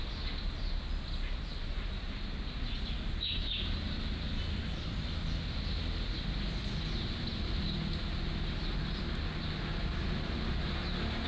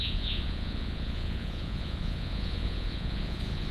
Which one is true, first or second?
first